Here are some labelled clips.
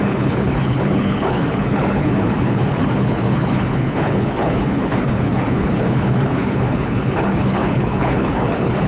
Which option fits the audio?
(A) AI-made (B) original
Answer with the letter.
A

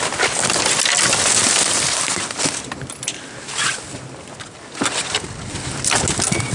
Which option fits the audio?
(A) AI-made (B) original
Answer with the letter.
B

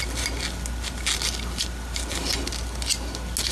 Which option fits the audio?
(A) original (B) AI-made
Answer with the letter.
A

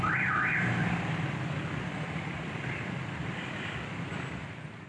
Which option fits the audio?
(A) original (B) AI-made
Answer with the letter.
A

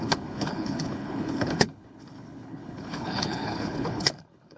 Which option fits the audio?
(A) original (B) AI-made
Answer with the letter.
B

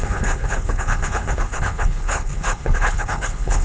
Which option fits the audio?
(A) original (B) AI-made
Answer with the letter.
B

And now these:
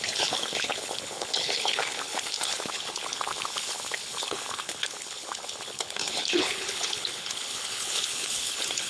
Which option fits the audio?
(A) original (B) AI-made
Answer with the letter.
B